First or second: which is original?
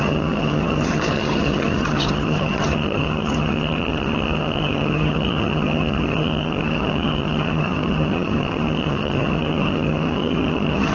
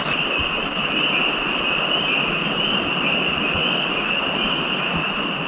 second